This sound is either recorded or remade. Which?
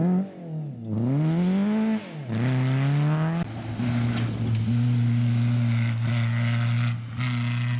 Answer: recorded